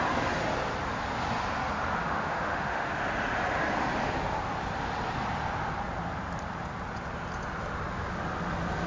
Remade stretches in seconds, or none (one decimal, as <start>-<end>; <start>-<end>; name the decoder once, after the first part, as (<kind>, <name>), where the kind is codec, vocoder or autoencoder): 2.0-2.9 (autoencoder, DAC-VAE)